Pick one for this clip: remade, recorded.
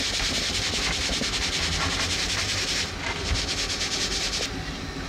recorded